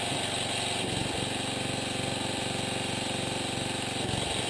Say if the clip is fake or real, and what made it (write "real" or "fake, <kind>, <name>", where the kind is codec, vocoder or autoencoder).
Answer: real